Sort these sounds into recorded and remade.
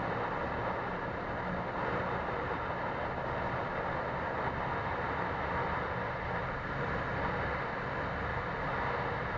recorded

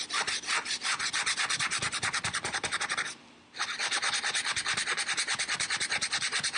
recorded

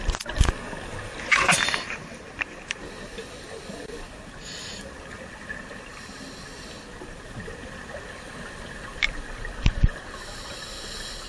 recorded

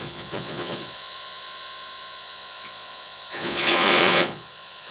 remade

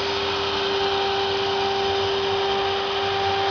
recorded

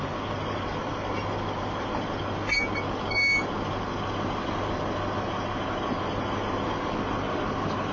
recorded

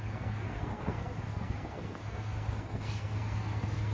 remade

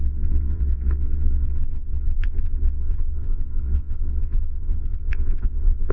remade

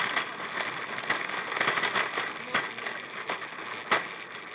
recorded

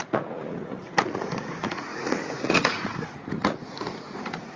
remade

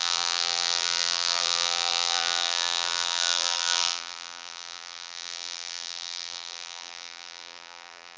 remade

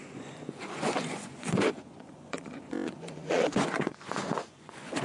remade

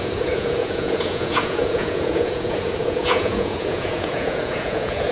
remade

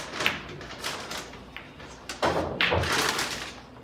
recorded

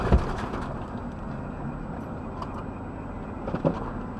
recorded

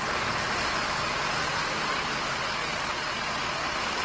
recorded